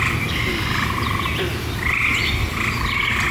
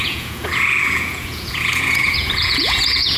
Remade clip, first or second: second